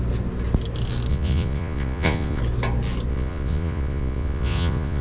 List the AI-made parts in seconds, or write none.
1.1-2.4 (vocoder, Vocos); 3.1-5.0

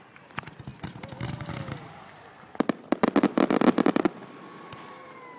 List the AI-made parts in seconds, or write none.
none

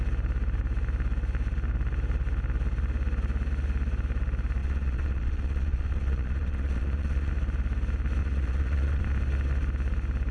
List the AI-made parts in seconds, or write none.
4.6-7.3 (vocoder, Vocos); 8.2-9.0